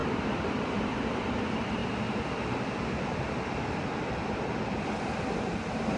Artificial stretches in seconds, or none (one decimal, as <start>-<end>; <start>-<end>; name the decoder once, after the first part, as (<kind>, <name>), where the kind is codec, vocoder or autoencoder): 0.0-1.8 (vocoder, BigVGAN v2); 5.4-6.0